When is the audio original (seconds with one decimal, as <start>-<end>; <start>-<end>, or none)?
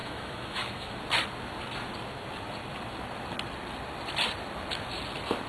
1.0-5.5